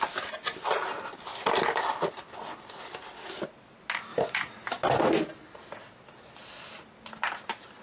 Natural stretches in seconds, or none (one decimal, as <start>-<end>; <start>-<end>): 0.0-7.8